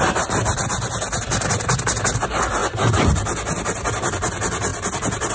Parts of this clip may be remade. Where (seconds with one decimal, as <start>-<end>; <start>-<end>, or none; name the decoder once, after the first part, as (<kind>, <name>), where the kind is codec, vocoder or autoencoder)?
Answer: none